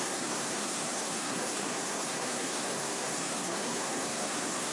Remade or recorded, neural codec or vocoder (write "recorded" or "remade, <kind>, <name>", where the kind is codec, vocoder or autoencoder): remade, codec, SNAC